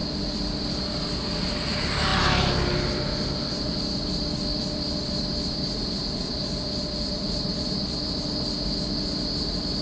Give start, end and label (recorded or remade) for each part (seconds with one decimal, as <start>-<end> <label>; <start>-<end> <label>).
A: 0.0-9.8 recorded